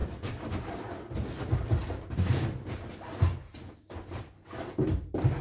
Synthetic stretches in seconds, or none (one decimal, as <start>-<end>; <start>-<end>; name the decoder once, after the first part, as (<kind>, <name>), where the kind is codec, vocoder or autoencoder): none